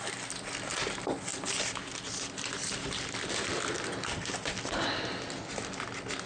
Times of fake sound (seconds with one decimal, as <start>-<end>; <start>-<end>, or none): 1.3-5.1